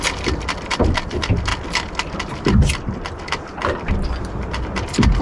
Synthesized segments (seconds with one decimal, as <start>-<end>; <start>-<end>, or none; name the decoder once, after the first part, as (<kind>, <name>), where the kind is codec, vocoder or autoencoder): none